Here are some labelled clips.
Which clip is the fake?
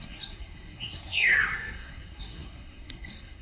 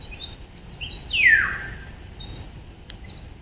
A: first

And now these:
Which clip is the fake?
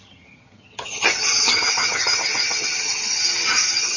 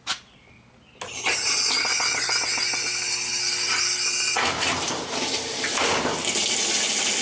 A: first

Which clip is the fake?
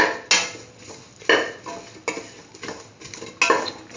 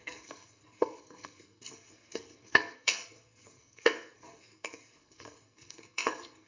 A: second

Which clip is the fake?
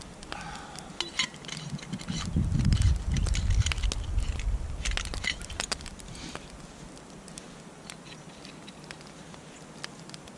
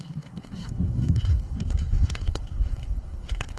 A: second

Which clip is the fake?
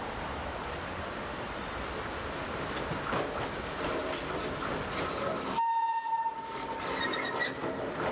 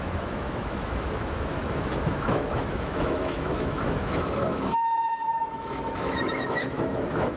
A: second